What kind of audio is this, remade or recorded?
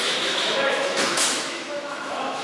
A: remade